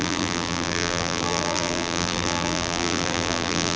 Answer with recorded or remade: remade